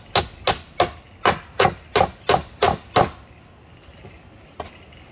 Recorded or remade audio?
recorded